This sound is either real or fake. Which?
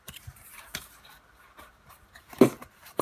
fake